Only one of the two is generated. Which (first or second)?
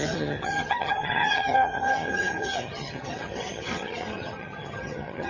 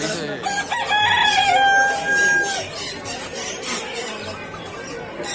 first